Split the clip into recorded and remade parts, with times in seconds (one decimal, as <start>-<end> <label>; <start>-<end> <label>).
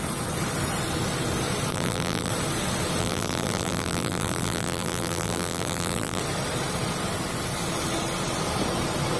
0.0-1.7 recorded; 1.7-2.3 remade; 2.3-3.0 recorded; 3.0-6.2 remade; 6.2-9.2 recorded